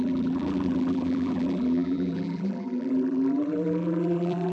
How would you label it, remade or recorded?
remade